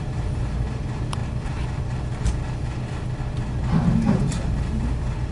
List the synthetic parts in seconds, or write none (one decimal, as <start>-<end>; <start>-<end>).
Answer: 0.0-1.2; 3.8-5.3